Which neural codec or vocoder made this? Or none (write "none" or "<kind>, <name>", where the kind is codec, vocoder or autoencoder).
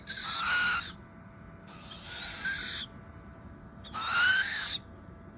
none